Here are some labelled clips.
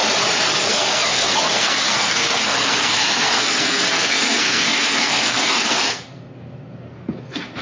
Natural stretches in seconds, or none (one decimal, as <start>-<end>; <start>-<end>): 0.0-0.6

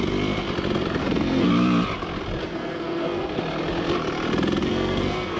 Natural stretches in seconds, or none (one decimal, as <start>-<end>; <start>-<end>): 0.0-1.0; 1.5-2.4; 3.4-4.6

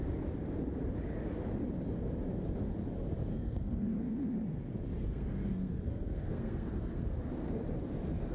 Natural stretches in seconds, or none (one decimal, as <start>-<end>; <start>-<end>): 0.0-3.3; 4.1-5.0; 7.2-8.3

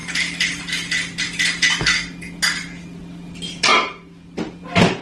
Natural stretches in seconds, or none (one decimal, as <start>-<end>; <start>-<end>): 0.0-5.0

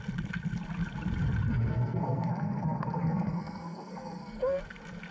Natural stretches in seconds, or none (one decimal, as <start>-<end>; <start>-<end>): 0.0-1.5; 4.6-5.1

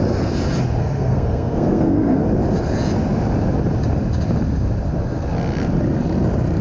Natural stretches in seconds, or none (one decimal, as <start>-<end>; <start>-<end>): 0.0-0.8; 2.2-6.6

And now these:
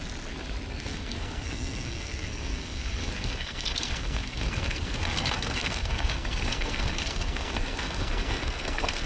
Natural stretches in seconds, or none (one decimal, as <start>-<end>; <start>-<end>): 0.0-0.7

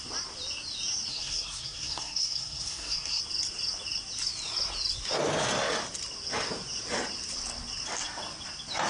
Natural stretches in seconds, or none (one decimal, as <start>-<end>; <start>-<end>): 0.0-1.1; 3.2-8.9